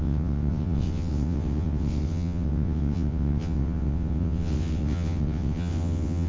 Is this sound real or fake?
fake